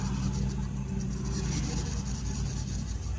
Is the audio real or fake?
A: real